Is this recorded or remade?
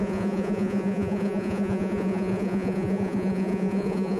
remade